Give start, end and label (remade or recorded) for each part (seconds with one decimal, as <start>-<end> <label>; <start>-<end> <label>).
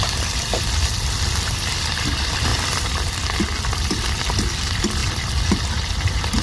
0.0-6.4 recorded